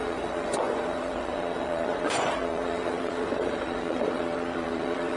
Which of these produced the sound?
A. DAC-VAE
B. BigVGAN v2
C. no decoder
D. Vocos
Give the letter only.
D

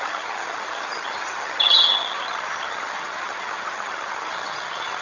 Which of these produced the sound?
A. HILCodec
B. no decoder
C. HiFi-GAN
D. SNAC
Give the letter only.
C